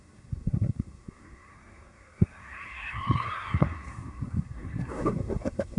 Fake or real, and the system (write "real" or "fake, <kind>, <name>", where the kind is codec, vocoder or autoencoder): fake, codec, SNAC